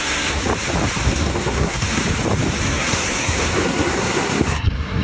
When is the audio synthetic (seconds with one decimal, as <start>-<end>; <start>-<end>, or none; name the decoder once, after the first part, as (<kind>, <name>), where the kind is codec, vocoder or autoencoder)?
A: 0.0-0.4 (codec, SNAC); 1.0-2.0; 2.6-5.0